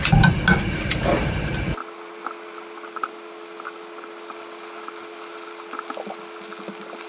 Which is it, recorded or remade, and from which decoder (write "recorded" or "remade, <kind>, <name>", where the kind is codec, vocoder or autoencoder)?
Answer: recorded